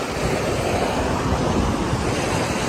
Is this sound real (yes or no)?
yes